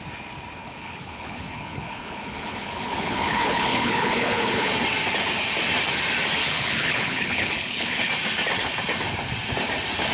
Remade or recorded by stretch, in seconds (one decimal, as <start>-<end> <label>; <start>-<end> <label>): 0.0-0.6 recorded; 0.6-4.7 remade; 4.7-6.4 recorded; 6.4-8.1 remade; 8.1-10.1 recorded